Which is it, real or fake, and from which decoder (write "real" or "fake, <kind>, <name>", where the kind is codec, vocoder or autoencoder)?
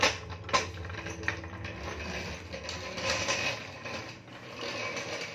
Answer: real